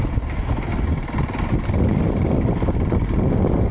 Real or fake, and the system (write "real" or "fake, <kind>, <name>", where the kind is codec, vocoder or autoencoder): real